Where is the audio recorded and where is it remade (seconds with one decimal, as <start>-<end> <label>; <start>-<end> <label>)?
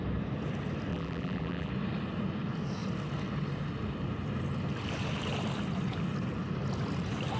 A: 0.0-0.9 recorded; 0.9-1.7 remade; 1.7-7.4 recorded